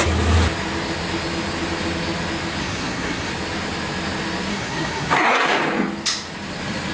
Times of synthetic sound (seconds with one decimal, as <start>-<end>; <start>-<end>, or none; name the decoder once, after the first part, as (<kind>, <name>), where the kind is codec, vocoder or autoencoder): 2.6-3.3 (codec, SNAC); 4.5-5.6